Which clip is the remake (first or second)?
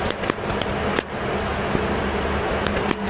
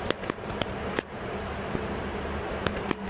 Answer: second